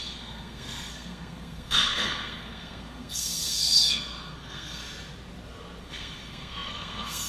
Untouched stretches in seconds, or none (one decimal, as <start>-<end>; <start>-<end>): 4.8-5.8